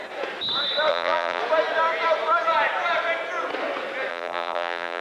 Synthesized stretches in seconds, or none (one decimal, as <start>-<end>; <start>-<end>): 0.9-1.4; 4.1-5.0